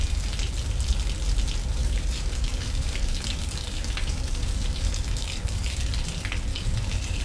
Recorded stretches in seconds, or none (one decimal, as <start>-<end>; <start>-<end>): 0.0-1.8; 5.9-6.5